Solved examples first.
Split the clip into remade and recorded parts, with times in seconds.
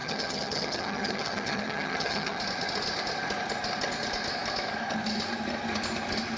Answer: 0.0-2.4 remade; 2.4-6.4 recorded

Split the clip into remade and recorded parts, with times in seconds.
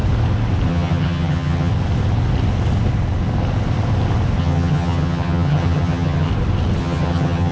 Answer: 0.0-0.7 recorded; 0.7-1.7 remade; 1.7-4.4 recorded; 4.4-6.3 remade; 6.3-6.8 recorded; 6.8-7.5 remade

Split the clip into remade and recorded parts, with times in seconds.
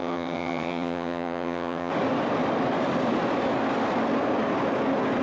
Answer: 0.0-1.9 remade; 1.9-5.2 recorded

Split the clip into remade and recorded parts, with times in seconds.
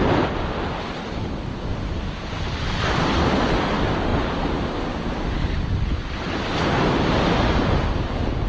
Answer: 0.0-8.5 recorded